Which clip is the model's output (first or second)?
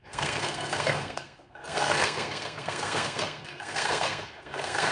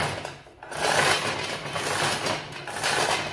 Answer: first